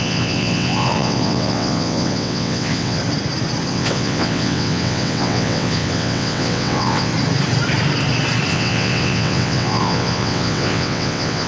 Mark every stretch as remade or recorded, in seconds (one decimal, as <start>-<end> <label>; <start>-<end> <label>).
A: 0.0-3.0 remade; 3.0-3.7 recorded; 3.7-7.1 remade; 7.1-8.5 recorded; 8.5-11.5 remade